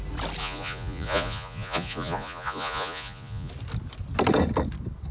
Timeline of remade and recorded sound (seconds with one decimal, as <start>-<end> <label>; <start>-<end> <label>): 0.0-0.4 recorded; 0.4-3.5 remade; 3.5-5.1 recorded